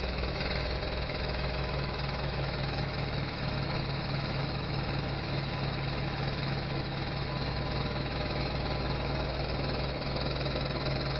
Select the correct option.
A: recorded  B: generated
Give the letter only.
B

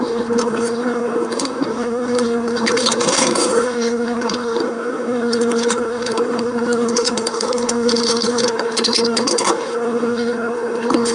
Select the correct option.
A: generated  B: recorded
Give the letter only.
A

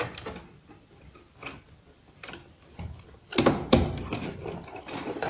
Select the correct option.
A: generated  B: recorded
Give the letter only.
B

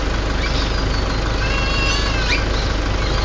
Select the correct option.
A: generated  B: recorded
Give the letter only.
B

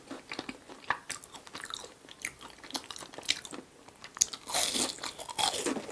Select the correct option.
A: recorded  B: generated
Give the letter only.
A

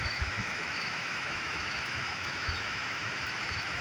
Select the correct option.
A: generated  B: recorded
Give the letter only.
A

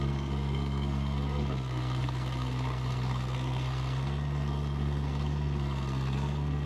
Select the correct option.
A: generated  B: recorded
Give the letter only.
A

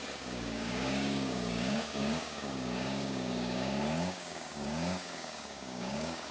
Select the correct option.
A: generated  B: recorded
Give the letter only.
A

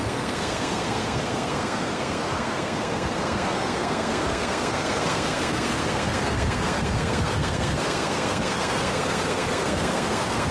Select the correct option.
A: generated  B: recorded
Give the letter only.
A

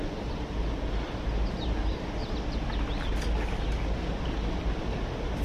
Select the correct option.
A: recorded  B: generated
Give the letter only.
A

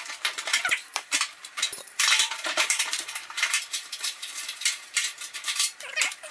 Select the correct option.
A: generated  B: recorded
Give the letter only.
A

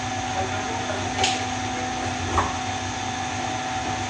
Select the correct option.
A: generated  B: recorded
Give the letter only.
B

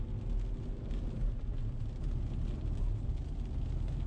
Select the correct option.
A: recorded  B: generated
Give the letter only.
A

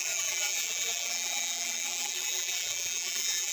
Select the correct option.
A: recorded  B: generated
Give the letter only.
B